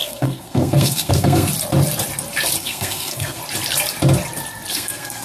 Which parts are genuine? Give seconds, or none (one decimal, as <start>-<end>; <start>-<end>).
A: 1.5-2.6; 3.4-4.7